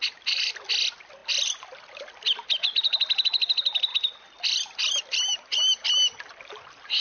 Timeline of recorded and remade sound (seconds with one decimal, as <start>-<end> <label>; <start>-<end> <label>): 0.0-7.0 recorded